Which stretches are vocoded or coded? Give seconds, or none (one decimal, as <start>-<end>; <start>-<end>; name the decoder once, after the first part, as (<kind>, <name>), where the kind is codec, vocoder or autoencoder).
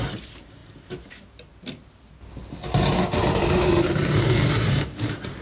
0.0-0.6 (vocoder, BigVGAN v2); 3.8-5.4